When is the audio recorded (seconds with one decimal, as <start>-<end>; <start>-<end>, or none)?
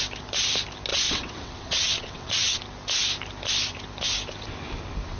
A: 0.0-0.9; 2.6-5.2